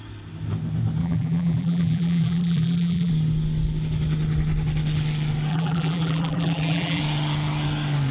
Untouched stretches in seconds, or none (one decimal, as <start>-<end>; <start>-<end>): 0.0-1.0; 3.1-5.5; 7.0-8.1